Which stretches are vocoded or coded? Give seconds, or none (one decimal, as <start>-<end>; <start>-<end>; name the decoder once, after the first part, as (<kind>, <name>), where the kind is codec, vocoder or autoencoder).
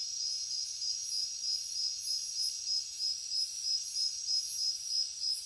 none